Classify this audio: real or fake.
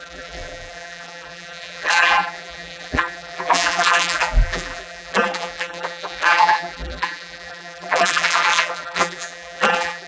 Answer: fake